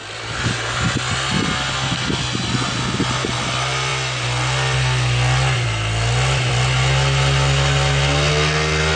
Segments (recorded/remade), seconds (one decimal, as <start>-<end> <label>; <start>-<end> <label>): 0.0-9.0 recorded

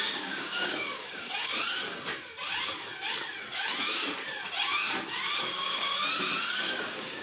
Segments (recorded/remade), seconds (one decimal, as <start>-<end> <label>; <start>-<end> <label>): 0.0-1.5 remade; 1.5-5.4 recorded; 5.4-5.9 remade; 5.9-6.7 recorded; 6.7-7.2 remade

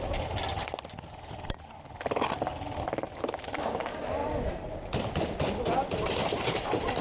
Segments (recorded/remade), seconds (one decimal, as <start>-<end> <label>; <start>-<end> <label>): 0.0-7.0 recorded

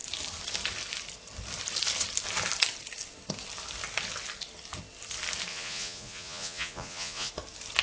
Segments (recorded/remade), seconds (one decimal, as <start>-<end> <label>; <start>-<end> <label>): 0.0-5.5 recorded; 5.5-7.3 remade; 7.3-7.8 recorded

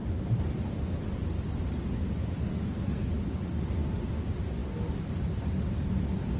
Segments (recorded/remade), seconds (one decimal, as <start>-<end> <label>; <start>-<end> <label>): 0.0-2.5 recorded; 2.5-3.1 remade; 3.1-6.4 recorded

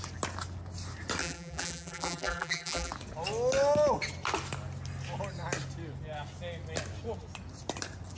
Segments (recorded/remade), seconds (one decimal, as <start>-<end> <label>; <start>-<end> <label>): 0.0-1.2 recorded; 1.2-2.9 remade; 2.9-8.2 recorded